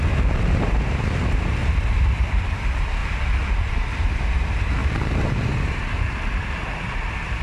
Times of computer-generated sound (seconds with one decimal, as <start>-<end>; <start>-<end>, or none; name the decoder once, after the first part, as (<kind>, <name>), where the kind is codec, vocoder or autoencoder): 0.0-1.6 (vocoder, BigVGAN v2); 2.3-3.0; 3.7-7.4